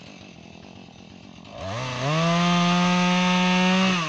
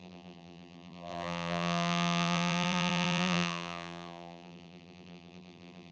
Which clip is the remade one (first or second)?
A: second